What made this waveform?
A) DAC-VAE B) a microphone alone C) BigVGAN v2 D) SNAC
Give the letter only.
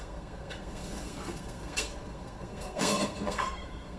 D